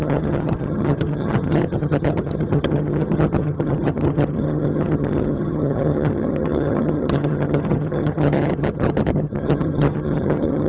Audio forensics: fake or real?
fake